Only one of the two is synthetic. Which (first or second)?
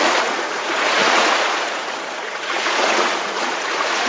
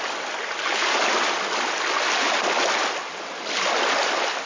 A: first